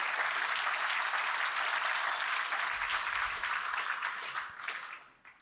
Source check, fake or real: real